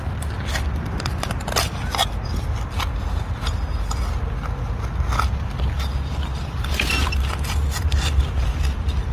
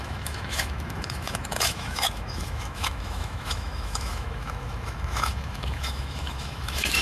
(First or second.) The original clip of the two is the first